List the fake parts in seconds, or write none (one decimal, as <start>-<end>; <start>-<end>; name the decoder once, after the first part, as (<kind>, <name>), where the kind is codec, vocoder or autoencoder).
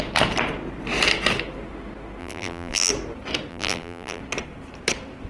2.2-2.9 (vocoder, BigVGAN v2); 3.5-4.2